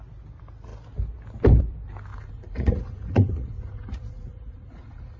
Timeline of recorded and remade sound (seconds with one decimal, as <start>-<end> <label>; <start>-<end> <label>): 0.0-2.1 recorded; 2.1-5.2 remade